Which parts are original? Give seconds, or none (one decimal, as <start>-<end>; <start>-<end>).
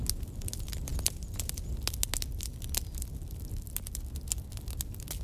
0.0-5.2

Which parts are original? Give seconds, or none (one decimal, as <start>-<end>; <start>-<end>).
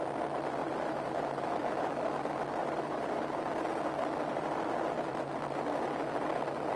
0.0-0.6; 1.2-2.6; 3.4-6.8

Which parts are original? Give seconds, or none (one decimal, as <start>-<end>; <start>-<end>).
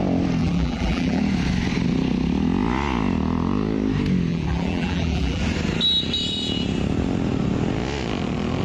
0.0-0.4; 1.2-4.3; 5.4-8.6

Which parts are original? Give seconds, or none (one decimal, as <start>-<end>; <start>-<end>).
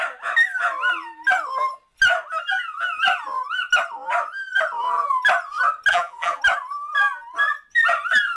0.0-5.9; 6.4-8.4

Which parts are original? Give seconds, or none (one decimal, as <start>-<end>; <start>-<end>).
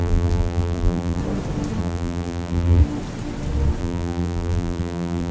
1.2-1.8; 2.8-3.8